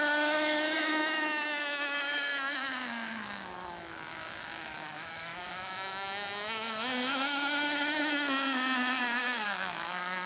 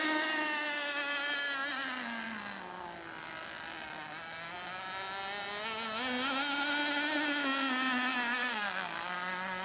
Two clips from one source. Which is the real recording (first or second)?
second